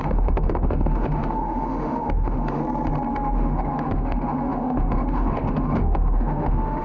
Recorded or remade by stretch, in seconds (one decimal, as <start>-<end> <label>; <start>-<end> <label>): 0.0-2.6 remade; 2.6-3.1 recorded; 3.1-6.8 remade